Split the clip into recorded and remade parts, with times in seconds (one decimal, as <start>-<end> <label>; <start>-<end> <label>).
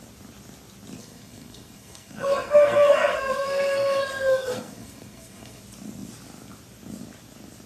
0.0-1.0 recorded; 1.0-5.6 remade; 5.6-7.7 recorded